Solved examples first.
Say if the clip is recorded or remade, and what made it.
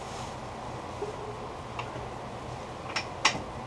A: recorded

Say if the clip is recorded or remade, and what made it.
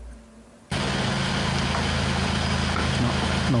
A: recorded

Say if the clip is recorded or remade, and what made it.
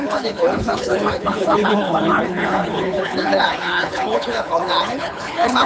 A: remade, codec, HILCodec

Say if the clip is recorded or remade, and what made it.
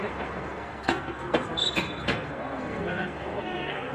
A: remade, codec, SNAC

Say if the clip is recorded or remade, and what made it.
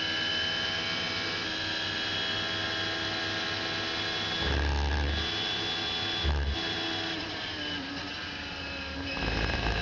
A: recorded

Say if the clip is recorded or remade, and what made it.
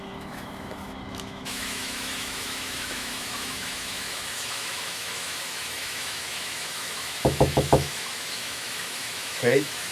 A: remade, autoencoder, DAC-VAE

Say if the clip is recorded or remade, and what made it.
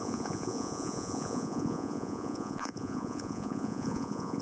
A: remade, vocoder, Vocos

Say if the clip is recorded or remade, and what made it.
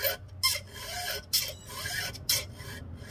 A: recorded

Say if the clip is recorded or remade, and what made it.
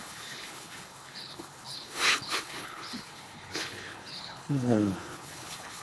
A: remade, codec, HILCodec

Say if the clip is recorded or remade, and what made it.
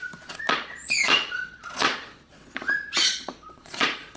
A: remade, vocoder, Vocos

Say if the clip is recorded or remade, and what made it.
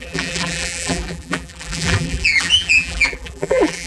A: remade, vocoder, BigVGAN v2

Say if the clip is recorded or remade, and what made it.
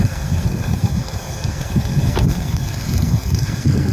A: remade, codec, SNAC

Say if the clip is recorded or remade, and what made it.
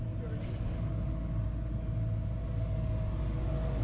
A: recorded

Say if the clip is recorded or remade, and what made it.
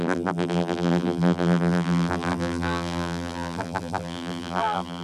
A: remade, vocoder, BigVGAN v2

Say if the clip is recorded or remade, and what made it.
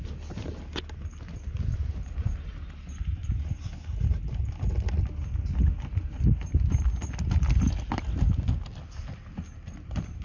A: recorded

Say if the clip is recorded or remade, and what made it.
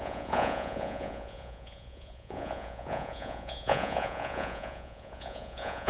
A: remade, vocoder, Vocos